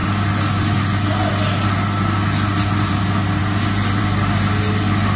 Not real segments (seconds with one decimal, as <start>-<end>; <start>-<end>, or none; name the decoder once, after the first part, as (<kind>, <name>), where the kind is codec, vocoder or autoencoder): none